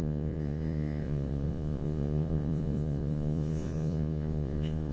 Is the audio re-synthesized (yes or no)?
yes